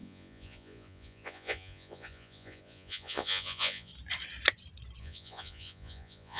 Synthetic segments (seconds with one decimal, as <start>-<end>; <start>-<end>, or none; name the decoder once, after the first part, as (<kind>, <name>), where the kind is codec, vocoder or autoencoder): 0.0-3.9 (vocoder, Vocos); 5.0-6.4